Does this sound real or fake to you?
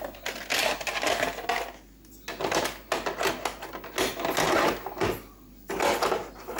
real